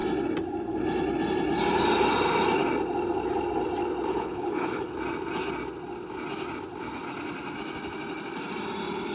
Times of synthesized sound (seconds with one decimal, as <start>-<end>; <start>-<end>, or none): 4.1-4.9